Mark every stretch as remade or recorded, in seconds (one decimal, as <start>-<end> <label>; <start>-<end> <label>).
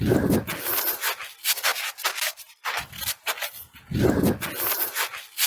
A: 0.0-5.5 recorded